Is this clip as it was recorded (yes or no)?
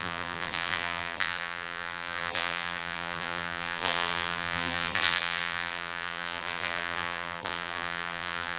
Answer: no